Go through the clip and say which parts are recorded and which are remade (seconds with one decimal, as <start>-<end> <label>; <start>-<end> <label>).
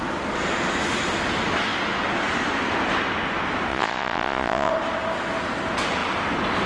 0.0-3.7 recorded; 3.7-4.7 remade; 4.7-6.7 recorded